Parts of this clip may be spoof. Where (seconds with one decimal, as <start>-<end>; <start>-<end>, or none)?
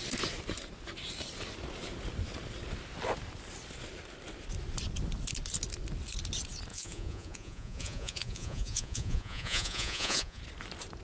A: 6.7-10.4